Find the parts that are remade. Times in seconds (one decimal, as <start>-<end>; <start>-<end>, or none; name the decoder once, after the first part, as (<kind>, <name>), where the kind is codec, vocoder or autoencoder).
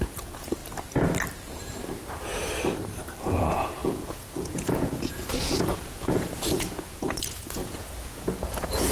0.0-0.6 (vocoder, Vocos); 3.4-8.9